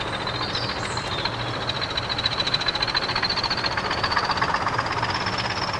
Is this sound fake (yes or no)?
no